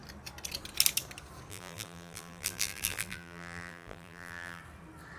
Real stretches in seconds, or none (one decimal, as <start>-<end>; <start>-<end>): 0.0-1.5; 4.6-5.2